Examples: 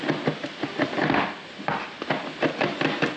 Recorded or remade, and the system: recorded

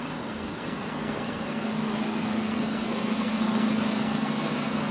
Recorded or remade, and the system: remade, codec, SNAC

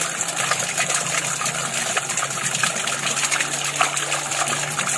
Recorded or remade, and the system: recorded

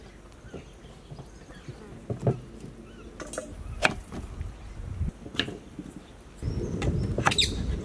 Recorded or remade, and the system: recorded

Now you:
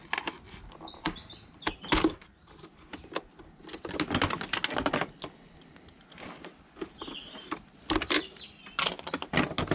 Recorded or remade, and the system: recorded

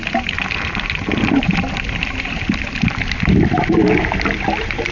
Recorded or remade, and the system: remade, vocoder, BigVGAN v2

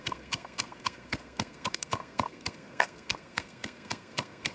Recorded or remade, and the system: remade, codec, SNAC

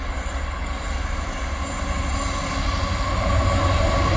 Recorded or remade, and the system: recorded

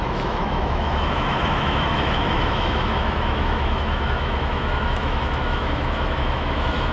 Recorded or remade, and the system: remade, autoencoder, DAC-VAE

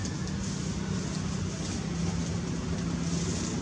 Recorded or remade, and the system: recorded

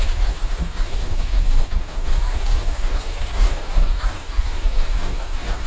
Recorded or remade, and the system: remade, codec, DAC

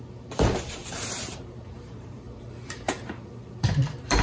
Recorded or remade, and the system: remade, vocoder, BigVGAN v2